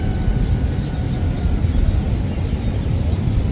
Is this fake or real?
real